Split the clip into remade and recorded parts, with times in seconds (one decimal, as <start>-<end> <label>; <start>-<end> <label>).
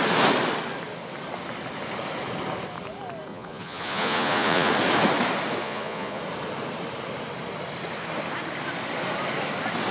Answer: 0.0-3.3 recorded; 3.3-4.7 remade; 4.7-5.6 recorded; 5.6-6.2 remade; 6.2-9.9 recorded